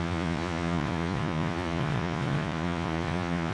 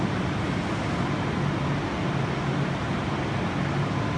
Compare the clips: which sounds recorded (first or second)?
second